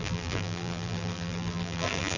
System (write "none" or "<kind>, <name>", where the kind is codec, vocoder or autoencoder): vocoder, BigVGAN v2